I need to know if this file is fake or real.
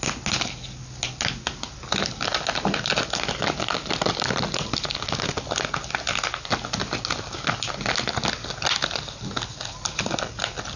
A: real